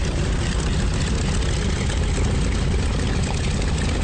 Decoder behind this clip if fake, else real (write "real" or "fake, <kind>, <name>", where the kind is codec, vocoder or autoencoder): real